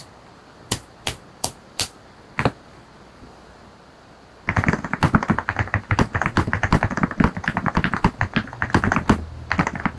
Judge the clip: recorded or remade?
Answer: recorded